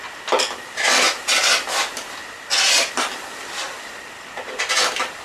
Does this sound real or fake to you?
real